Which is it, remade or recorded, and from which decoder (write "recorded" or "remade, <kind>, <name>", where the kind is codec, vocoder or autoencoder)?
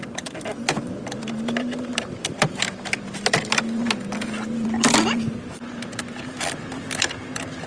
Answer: remade, vocoder, BigVGAN v2